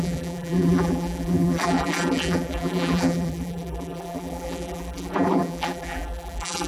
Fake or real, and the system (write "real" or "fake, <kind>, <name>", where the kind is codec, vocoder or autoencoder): fake, vocoder, BigVGAN v2